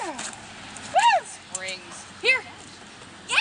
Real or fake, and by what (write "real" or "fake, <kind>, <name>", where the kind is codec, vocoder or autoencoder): real